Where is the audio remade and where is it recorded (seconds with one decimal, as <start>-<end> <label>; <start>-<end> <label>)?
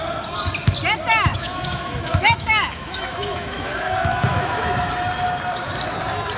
0.0-1.3 recorded; 1.3-5.1 remade; 5.1-6.4 recorded